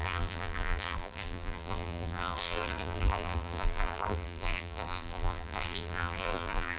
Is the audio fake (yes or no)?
yes